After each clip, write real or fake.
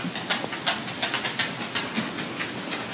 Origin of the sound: real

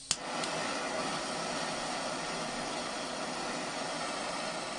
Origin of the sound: real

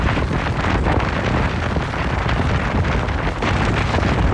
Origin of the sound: real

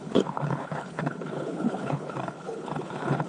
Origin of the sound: fake